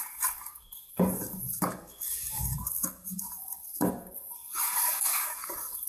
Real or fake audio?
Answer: fake